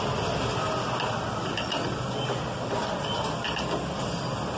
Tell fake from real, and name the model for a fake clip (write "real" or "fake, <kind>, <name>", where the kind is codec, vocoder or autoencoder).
real